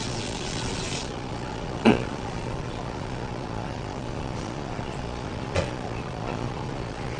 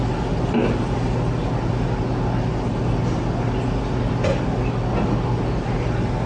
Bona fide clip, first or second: second